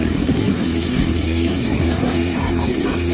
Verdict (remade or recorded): remade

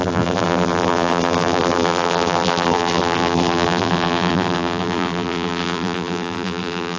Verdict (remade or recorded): remade